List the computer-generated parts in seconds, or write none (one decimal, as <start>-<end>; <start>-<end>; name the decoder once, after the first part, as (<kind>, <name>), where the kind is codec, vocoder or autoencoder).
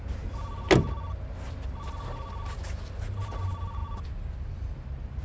none